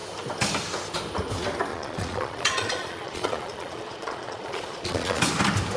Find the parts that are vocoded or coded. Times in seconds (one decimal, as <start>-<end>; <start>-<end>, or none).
1.7-5.2